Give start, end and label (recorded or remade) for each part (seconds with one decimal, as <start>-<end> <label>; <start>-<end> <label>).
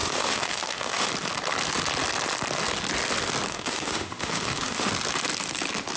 0.0-1.1 remade; 1.1-3.5 recorded; 3.5-4.9 remade; 4.9-6.0 recorded